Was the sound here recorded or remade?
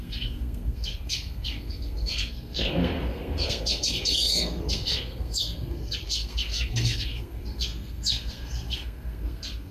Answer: remade